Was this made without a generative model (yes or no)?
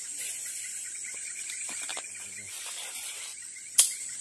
yes